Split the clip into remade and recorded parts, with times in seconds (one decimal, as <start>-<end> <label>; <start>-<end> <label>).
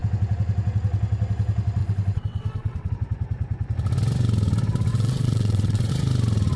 0.0-1.8 recorded; 1.8-2.9 remade; 2.9-4.9 recorded; 4.9-5.9 remade; 5.9-6.6 recorded